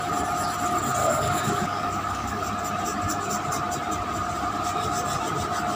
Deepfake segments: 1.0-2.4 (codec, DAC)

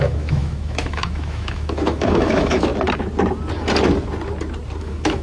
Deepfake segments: 0.0-2.7 (autoencoder, DAC-VAE); 4.8-5.2

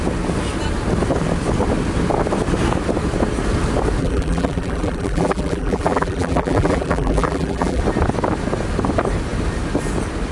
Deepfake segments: 4.0-7.8 (vocoder, BigVGAN v2)